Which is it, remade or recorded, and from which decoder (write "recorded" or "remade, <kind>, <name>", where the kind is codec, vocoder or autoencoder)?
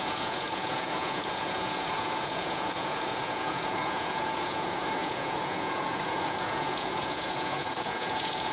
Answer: remade, vocoder, Vocos